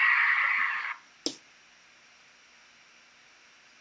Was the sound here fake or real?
real